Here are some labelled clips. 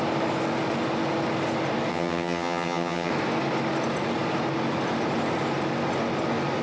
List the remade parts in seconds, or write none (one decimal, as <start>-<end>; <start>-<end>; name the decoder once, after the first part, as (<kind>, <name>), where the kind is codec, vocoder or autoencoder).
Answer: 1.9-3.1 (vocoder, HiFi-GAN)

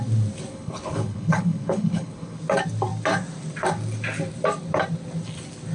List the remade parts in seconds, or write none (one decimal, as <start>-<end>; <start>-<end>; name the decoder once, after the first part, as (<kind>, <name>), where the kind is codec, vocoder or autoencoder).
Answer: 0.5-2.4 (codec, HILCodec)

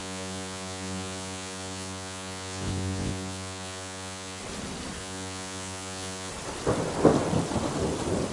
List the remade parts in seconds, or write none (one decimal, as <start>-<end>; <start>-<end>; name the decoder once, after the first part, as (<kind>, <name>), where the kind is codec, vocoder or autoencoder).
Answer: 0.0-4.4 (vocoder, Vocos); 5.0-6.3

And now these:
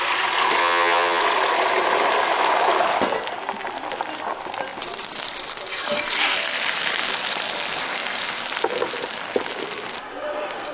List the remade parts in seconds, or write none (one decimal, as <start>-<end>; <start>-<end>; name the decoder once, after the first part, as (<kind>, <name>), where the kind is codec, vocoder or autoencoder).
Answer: 0.6-1.2 (vocoder, HiFi-GAN)